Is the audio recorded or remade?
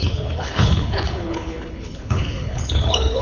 remade